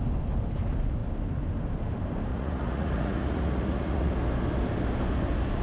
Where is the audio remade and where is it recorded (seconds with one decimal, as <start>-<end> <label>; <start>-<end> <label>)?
0.0-2.3 recorded; 2.3-4.1 remade; 4.1-5.6 recorded